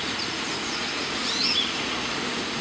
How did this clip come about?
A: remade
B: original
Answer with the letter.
A